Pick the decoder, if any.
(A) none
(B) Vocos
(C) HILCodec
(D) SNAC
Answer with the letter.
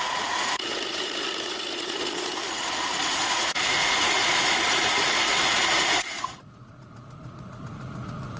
B